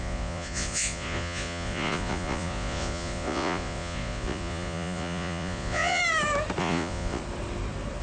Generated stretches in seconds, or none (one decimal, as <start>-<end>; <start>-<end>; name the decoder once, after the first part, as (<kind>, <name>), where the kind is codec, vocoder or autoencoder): 0.0-6.0 (vocoder, Vocos); 6.6-7.2